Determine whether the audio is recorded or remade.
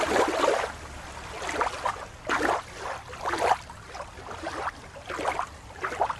recorded